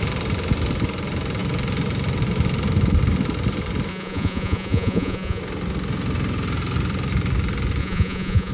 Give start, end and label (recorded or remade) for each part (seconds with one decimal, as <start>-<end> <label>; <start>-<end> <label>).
0.0-3.9 recorded; 3.9-5.4 remade; 5.4-7.8 recorded; 7.8-8.5 remade